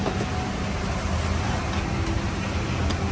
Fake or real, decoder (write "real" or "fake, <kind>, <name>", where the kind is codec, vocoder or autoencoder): real